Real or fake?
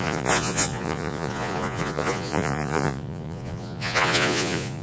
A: fake